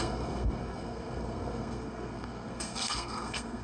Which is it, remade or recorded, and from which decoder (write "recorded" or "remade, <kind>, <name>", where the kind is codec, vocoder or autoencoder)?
remade, codec, SNAC